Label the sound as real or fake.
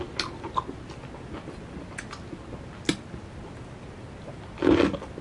real